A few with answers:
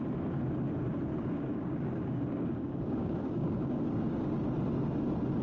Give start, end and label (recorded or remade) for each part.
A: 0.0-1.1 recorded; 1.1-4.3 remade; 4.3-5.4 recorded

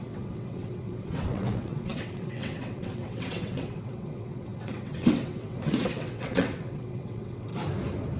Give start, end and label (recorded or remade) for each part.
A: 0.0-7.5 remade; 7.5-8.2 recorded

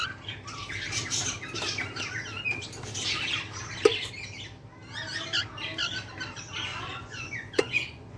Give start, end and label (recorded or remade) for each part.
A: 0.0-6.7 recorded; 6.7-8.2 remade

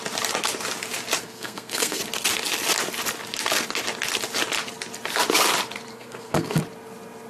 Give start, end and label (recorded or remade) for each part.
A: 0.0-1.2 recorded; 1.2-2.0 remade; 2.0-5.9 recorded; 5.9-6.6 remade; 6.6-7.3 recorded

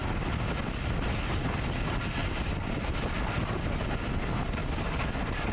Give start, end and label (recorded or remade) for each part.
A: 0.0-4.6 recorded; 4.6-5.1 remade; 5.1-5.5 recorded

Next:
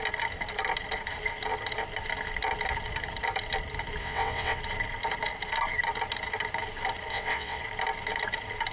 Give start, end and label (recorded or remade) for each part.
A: 0.0-4.0 recorded; 4.0-4.6 remade; 4.6-7.1 recorded; 7.1-7.6 remade; 7.6-8.7 recorded

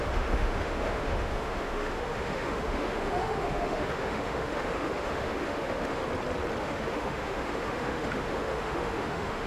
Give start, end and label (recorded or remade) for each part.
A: 0.0-6.0 remade; 6.0-6.6 recorded; 6.6-9.5 remade

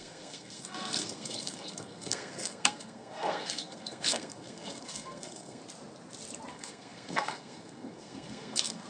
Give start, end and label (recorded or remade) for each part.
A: 0.0-5.6 remade; 5.6-6.5 recorded; 6.5-8.9 remade